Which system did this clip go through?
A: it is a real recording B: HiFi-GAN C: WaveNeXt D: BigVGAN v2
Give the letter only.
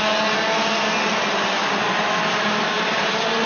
A